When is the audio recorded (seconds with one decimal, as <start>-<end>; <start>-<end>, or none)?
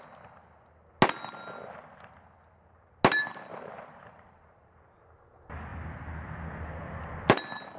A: 0.0-3.5; 4.0-7.8